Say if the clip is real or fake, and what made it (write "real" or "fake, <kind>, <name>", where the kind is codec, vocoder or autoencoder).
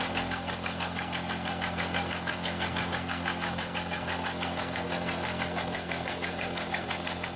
fake, codec, SNAC